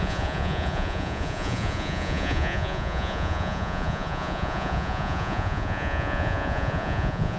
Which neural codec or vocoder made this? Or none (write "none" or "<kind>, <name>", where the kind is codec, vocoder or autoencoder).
vocoder, Vocos